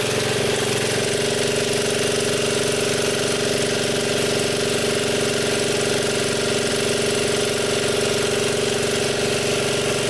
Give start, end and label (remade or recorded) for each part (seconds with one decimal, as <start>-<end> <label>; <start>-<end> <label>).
0.0-10.1 recorded